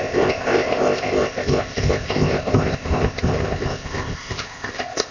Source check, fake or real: fake